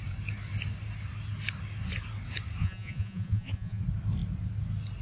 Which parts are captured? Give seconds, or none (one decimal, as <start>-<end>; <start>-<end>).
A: 0.0-2.6; 3.8-5.0